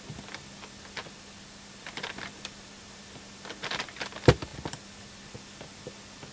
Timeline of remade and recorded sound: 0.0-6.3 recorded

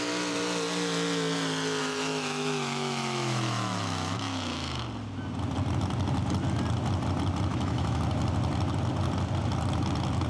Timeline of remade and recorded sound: 0.0-1.8 recorded; 1.8-4.8 remade; 4.8-7.5 recorded; 7.5-8.0 remade; 8.0-10.3 recorded

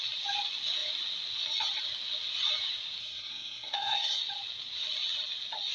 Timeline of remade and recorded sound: 0.0-3.0 recorded; 3.0-4.2 remade; 4.2-5.7 recorded

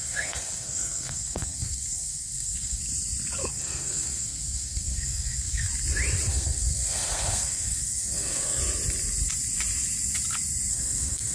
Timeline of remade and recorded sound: 0.0-2.8 remade; 2.8-3.5 recorded; 3.5-5.7 remade; 5.7-6.3 recorded; 6.3-8.6 remade; 8.6-10.7 recorded; 10.7-11.3 remade

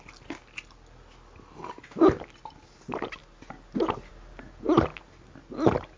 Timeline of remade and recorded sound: 0.0-6.0 recorded

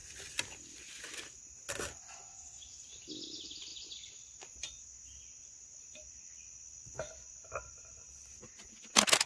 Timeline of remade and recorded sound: 0.0-9.3 recorded

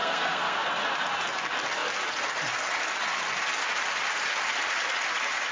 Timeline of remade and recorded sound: 0.0-0.7 remade; 0.7-5.5 recorded

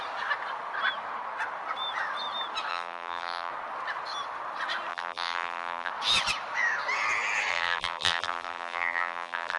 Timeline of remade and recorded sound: 0.0-2.7 recorded; 2.7-3.5 remade; 3.5-4.9 recorded; 4.9-5.9 remade; 5.9-7.5 recorded; 7.5-9.6 remade